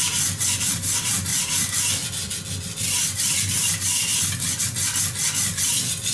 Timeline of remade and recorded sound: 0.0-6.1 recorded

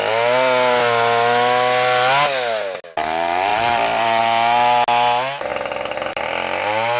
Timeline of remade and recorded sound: 0.0-3.5 recorded; 3.5-4.2 remade; 4.2-7.0 recorded

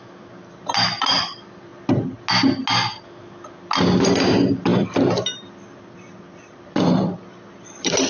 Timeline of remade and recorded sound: 0.0-1.7 remade; 1.7-4.0 recorded; 4.0-8.1 remade

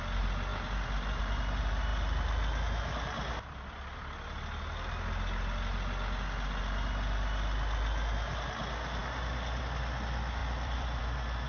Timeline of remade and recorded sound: 0.0-10.4 recorded; 10.4-11.0 remade; 11.0-11.5 recorded